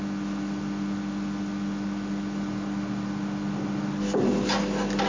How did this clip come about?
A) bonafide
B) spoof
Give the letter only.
A